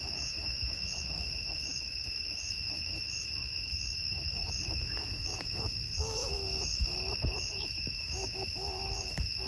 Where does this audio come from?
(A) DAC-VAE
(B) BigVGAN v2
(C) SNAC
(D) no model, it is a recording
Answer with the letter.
A